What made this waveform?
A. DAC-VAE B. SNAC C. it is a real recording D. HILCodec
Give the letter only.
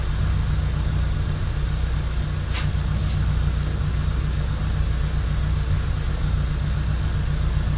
C